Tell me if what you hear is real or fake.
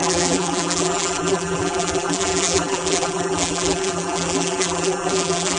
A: fake